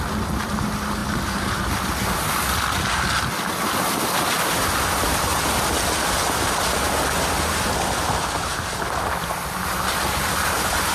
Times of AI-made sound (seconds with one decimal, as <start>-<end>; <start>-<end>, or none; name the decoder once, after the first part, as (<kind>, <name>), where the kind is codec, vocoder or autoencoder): none